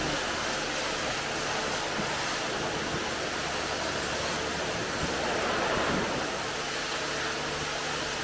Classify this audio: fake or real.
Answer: real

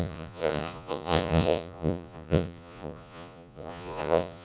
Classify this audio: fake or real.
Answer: fake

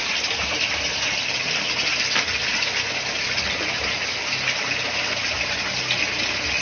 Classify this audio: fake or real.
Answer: real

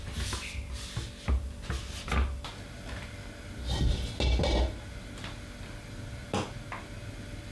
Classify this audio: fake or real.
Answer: real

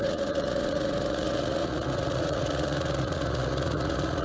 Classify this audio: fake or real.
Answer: fake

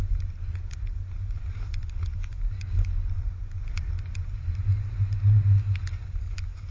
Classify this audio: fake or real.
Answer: real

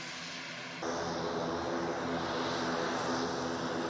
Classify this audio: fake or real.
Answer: real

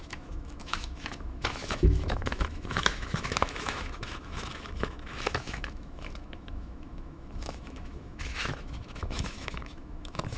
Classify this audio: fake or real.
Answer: fake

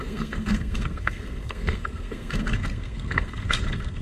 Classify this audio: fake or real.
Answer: fake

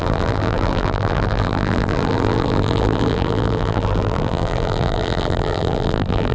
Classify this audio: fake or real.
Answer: fake